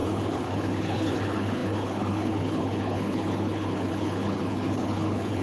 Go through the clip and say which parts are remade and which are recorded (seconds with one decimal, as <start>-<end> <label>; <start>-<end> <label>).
0.0-5.4 remade